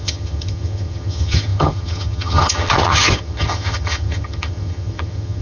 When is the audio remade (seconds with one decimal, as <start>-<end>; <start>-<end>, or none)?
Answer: 0.0-5.4